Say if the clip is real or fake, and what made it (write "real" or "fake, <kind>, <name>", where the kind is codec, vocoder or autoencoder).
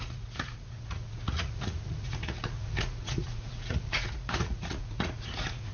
fake, vocoder, Vocos